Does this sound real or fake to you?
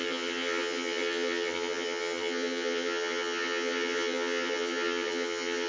fake